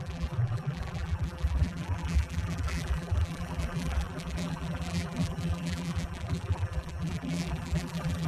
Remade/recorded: remade